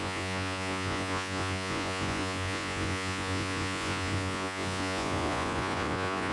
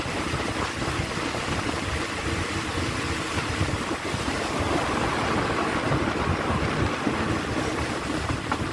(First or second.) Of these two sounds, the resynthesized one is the first